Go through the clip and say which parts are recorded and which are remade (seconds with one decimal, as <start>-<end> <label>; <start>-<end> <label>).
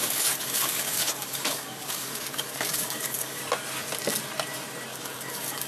0.0-3.4 remade; 3.4-4.9 recorded; 4.9-5.7 remade